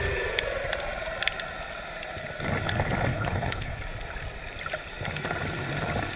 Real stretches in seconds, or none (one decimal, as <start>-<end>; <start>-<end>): 0.0-3.1; 3.8-6.2